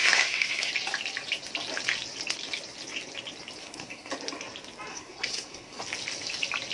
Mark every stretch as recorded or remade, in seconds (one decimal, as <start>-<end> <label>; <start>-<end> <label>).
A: 0.0-0.7 remade; 0.7-3.6 recorded; 3.6-4.1 remade; 4.1-4.9 recorded; 4.9-5.8 remade; 5.8-6.7 recorded